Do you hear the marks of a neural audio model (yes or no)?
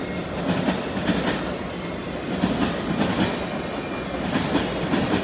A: no